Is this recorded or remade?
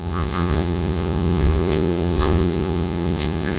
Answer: remade